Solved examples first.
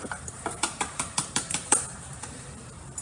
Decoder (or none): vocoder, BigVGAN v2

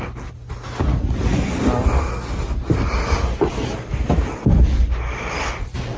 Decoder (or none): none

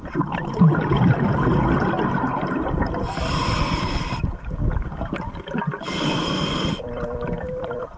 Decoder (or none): vocoder, BigVGAN v2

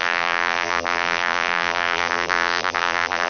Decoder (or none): vocoder, BigVGAN v2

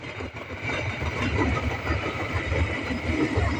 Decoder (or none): vocoder, BigVGAN v2